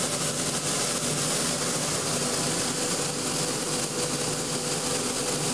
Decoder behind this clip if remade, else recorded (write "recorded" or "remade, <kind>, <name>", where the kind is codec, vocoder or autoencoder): recorded